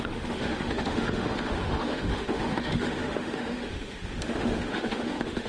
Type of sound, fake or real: fake